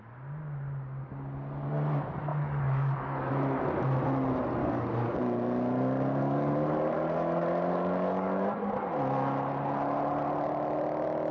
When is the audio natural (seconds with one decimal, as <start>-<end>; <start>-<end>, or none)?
0.0-2.3; 3.3-4.6; 5.2-6.2; 8.7-11.3